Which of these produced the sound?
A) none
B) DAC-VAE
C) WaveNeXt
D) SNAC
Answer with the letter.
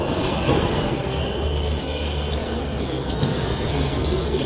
D